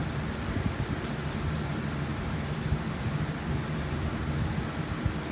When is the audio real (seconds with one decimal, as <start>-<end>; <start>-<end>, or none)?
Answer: 0.0-5.3